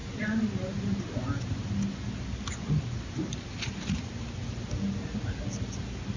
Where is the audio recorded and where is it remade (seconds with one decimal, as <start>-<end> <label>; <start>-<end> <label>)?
0.0-6.2 recorded